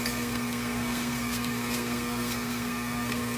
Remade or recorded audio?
remade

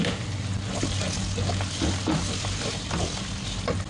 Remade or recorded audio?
recorded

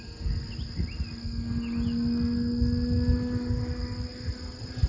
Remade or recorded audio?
recorded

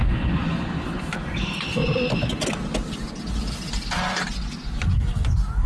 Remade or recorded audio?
recorded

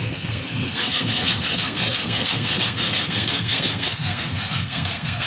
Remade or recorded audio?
remade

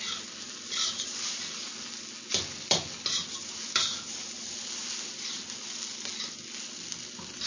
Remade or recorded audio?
recorded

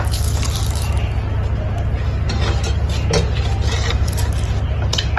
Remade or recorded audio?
recorded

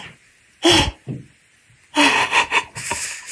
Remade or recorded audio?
recorded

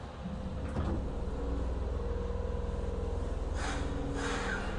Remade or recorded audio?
recorded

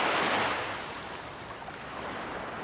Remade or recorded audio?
recorded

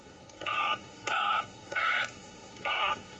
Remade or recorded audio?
remade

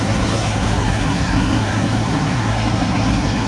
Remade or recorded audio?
remade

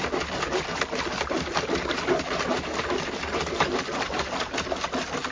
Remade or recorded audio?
recorded